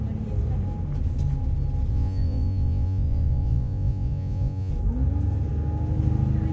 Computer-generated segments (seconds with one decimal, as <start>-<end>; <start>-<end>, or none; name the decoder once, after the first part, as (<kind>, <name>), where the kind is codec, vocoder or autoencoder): 1.9-4.7 (vocoder, Vocos)